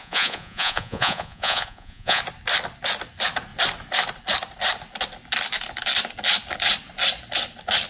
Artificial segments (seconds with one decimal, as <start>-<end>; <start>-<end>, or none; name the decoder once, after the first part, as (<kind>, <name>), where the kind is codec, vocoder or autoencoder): 0.0-2.2 (vocoder, Vocos)